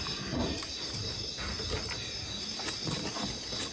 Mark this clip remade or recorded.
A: recorded